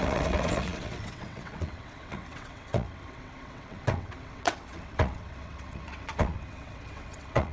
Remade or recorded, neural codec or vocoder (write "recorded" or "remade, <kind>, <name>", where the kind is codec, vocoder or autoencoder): remade, vocoder, WaveNeXt